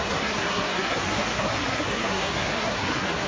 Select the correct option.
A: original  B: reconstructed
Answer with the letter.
B